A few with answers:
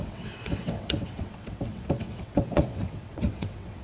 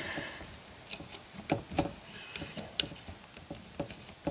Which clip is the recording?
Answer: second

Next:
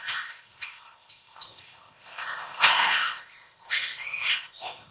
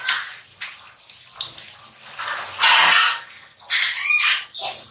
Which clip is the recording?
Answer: second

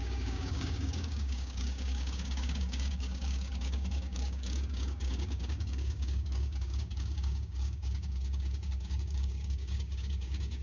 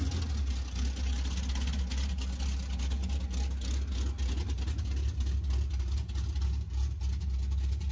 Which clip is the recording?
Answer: second